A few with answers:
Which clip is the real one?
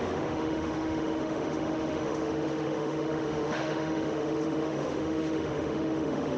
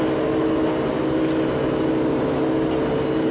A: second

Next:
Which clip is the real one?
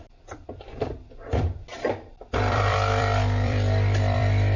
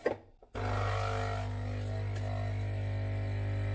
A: second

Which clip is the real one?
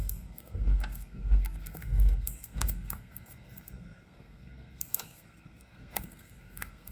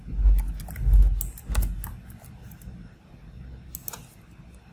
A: second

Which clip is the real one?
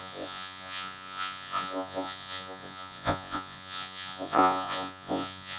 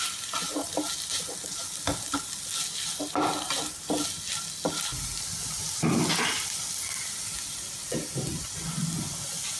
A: second